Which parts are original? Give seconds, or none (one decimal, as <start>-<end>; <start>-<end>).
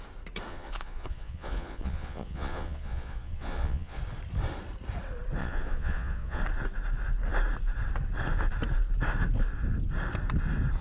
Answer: 0.0-0.5; 4.0-5.4; 6.4-10.8